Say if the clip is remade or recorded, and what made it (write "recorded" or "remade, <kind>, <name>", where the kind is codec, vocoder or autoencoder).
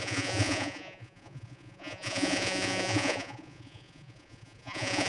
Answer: remade, vocoder, Vocos